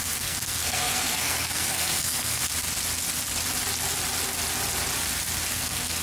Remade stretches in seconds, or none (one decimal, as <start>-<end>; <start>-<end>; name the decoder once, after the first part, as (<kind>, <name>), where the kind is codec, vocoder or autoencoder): 0.0-2.5 (codec, SNAC); 5.5-6.0